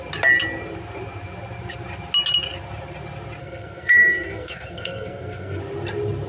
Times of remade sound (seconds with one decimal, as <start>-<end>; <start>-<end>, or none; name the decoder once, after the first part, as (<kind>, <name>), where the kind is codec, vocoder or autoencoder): 3.4-5.6 (codec, SNAC)

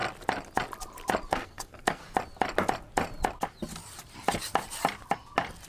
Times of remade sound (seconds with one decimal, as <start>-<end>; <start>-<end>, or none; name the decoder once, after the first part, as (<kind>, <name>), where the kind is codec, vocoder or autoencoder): 1.3-2.0 (codec, SNAC)

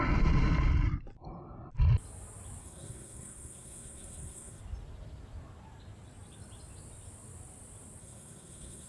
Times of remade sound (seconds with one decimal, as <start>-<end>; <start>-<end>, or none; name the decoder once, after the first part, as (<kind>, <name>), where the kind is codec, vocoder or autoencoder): 2.6-4.6 (codec, SNAC); 8.0-8.9

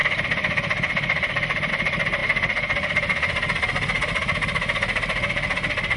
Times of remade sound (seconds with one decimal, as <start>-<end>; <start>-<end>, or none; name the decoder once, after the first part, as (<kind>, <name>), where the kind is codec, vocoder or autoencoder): none

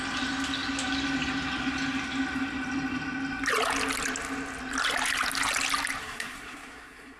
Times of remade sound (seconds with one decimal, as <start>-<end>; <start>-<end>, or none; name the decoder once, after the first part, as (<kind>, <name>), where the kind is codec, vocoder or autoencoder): 6.0-7.2 (codec, SNAC)

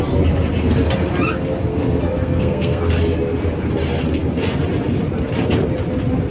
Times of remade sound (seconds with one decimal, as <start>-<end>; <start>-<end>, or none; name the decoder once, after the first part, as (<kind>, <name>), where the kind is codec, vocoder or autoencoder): 1.7-2.8 (codec, SNAC)

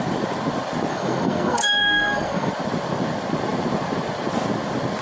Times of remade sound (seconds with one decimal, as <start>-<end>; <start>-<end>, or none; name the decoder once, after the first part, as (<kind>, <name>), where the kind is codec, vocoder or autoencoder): 0.9-2.5 (codec, SNAC)